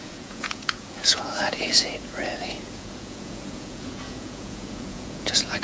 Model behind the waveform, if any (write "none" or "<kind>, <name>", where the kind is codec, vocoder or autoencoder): vocoder, Vocos